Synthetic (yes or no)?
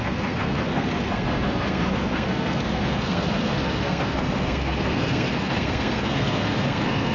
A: yes